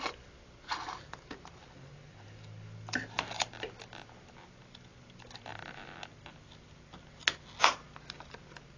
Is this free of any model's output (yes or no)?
yes